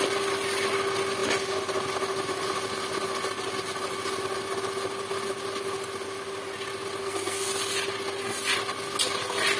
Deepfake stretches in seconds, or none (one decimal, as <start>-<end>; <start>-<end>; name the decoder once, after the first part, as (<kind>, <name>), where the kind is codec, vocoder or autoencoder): 7.0-7.5 (codec, SNAC)